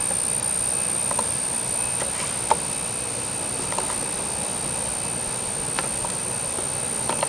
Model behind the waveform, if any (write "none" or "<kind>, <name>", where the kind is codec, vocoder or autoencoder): none